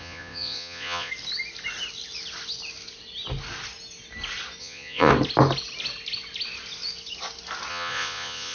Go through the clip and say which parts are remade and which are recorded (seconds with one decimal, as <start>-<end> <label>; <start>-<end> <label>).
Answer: 0.0-1.1 remade; 1.1-4.6 recorded; 4.6-5.1 remade; 5.1-7.7 recorded; 7.7-8.5 remade